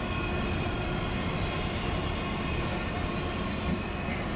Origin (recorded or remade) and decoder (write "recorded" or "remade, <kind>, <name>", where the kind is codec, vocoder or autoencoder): recorded